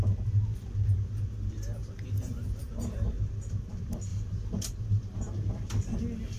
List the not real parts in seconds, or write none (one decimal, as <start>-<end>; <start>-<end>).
1.8-2.8

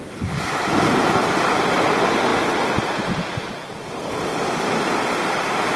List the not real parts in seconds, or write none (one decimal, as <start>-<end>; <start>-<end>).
0.0-1.5

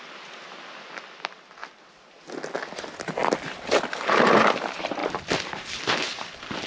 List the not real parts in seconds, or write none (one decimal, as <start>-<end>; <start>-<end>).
3.2-3.7

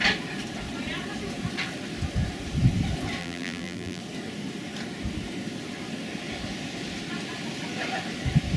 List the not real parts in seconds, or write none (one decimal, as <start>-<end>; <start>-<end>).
3.2-4.0

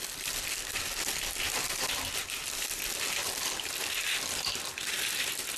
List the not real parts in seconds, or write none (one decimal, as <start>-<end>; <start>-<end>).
0.0-5.6

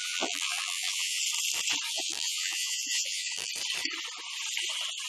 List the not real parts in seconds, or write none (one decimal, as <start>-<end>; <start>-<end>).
0.0-1.2; 1.9-3.5